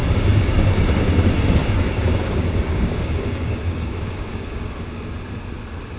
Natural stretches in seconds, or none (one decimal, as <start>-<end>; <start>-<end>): 0.7-1.6; 5.0-6.0